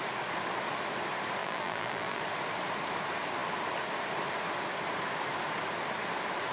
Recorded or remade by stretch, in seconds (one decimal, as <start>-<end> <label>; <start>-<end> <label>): 0.0-1.4 recorded; 1.4-2.2 remade; 2.2-6.5 recorded